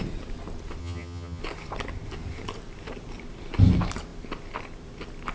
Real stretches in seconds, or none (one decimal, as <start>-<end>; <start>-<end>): 0.0-0.8; 1.4-5.3

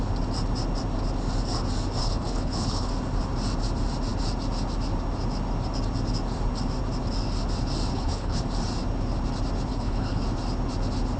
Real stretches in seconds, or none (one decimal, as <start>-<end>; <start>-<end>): 0.0-2.0; 2.9-7.9; 8.4-9.7; 10.2-11.2

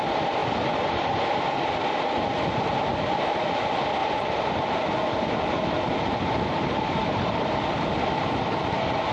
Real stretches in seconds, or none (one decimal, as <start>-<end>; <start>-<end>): 0.0-4.0; 4.7-7.0; 8.2-9.1

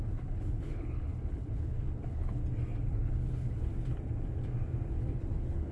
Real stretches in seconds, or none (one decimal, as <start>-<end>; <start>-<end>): 2.4-2.9; 3.7-5.0